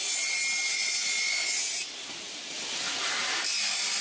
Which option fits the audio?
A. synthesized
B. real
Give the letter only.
B